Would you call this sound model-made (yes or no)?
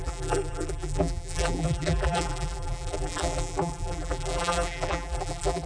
yes